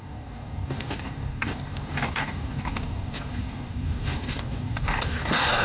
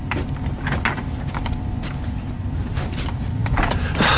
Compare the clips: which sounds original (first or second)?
second